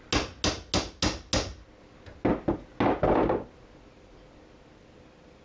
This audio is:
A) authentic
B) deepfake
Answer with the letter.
A